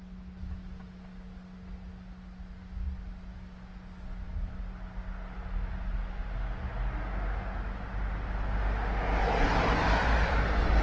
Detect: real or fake real